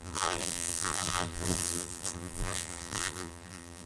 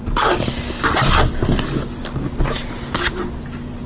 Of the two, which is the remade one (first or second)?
first